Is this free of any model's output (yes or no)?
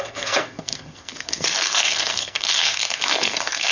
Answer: no